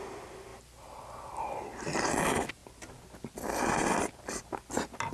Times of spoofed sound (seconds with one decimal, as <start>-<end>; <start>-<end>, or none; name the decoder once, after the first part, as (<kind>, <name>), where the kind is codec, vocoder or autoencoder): none